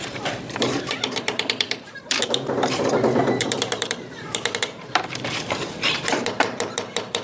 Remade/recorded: remade